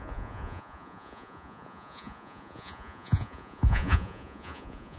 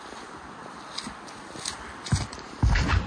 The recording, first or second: second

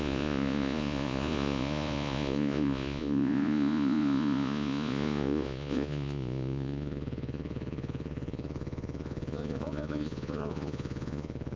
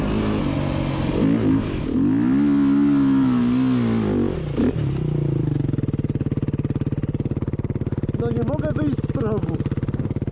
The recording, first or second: second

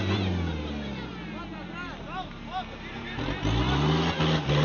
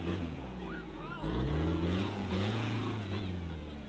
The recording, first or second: first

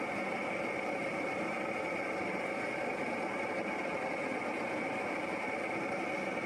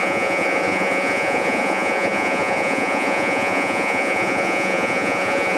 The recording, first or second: first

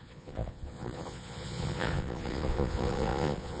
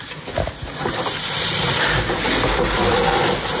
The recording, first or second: second